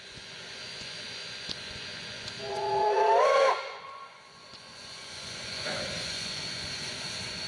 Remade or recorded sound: remade